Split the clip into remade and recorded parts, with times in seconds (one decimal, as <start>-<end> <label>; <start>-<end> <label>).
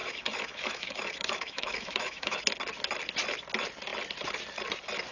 0.0-2.4 remade; 2.4-5.1 recorded